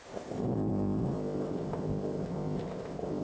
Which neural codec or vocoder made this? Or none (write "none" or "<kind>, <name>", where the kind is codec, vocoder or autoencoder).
codec, ZipCodec